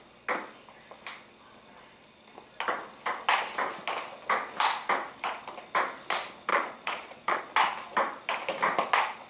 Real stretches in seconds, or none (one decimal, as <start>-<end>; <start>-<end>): 0.0-6.5; 7.4-9.3